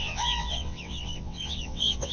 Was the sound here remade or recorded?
remade